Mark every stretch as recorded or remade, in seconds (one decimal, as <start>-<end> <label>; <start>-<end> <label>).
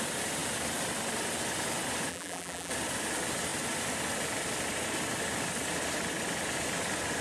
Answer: 0.0-2.1 recorded; 2.1-2.7 remade; 2.7-7.2 recorded